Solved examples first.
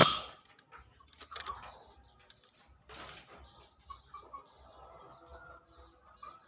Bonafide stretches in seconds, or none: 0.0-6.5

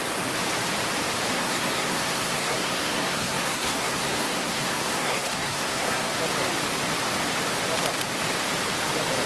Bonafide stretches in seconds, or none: 0.0-1.3; 6.2-9.3

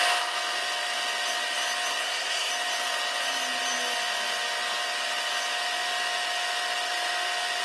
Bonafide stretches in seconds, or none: 0.0-1.9; 2.5-7.6

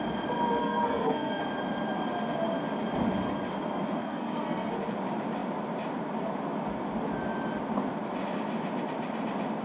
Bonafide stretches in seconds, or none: 0.0-0.6; 1.4-4.0; 4.7-9.6

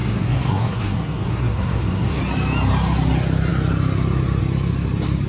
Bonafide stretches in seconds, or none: 2.2-5.3

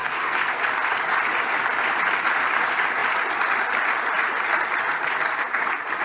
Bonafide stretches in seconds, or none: 0.7-6.0

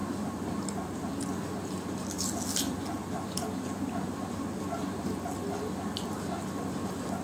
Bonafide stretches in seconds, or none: 0.0-7.2

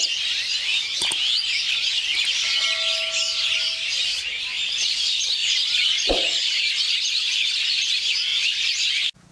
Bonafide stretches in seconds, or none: 0.0-9.3